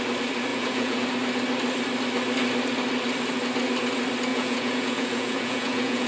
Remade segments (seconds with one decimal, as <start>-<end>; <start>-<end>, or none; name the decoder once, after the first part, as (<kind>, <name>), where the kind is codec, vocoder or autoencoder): 0.5-1.0 (vocoder, Vocos); 4.3-6.1